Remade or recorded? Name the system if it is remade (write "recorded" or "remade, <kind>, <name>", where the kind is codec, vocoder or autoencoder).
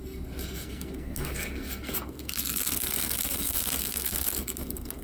remade, codec, SNAC